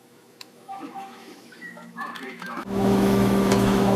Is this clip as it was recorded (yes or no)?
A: no